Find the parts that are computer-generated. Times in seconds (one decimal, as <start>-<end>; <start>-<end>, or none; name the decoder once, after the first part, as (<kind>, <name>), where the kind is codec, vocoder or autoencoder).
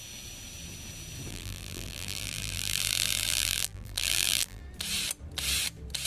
1.3-4.6 (vocoder, BigVGAN v2)